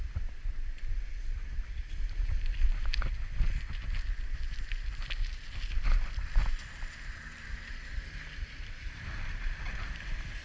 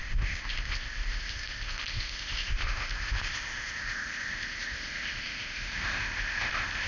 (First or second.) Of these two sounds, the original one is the first